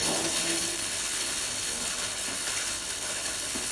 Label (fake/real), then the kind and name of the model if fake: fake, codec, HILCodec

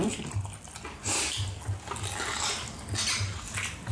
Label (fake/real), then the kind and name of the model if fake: real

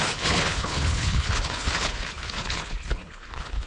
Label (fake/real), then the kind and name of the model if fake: fake, codec, HILCodec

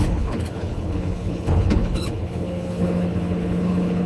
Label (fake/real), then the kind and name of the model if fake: fake, codec, HILCodec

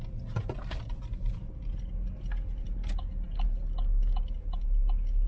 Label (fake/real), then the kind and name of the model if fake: real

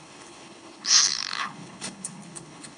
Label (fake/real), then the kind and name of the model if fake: fake, codec, HILCodec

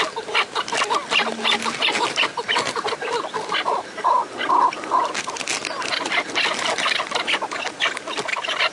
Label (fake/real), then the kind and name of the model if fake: real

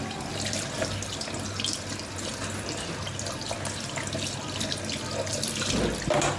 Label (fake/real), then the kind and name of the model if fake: real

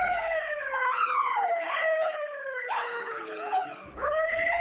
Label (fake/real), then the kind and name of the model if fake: fake, codec, HILCodec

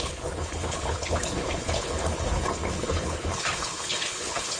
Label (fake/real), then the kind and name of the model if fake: fake, codec, HILCodec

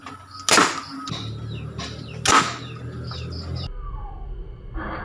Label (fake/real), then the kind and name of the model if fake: real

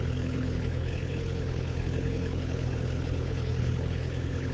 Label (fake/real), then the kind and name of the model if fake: fake, codec, HILCodec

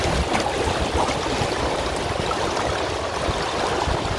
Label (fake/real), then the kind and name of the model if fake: real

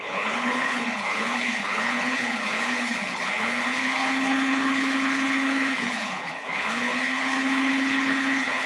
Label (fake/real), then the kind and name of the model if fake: fake, codec, HILCodec